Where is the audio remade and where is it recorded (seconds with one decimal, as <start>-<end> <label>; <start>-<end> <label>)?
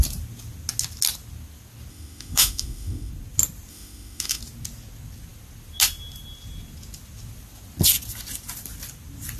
0.0-1.9 recorded; 1.9-3.1 remade; 3.1-3.7 recorded; 3.7-4.4 remade; 4.4-9.4 recorded